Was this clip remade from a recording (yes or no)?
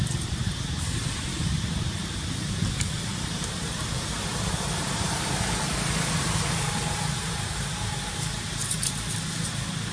yes